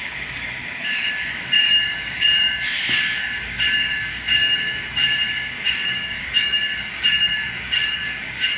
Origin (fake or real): fake